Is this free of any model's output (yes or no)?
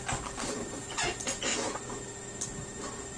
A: yes